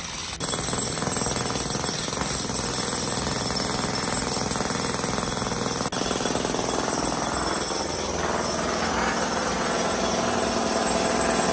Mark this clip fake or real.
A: real